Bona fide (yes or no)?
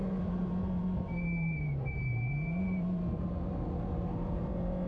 no